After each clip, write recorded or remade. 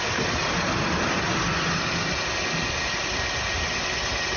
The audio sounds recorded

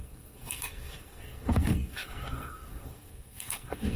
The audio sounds remade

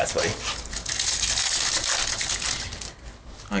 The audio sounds recorded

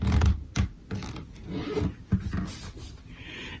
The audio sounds recorded